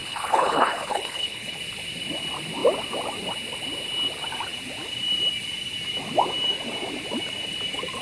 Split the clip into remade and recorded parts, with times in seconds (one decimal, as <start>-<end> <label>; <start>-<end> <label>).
0.0-1.6 remade; 1.6-8.0 recorded